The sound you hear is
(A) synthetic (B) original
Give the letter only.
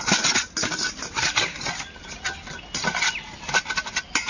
B